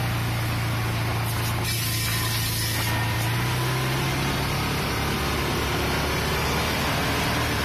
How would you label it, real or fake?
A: real